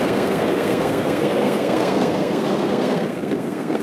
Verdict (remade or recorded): remade